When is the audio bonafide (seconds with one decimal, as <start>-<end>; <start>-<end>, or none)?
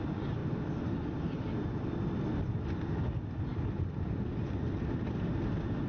0.0-5.9